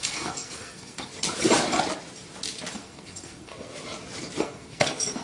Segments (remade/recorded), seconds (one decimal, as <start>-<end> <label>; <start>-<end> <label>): 0.0-1.1 remade; 1.1-2.7 recorded; 2.7-3.7 remade; 3.7-4.4 recorded; 4.4-5.2 remade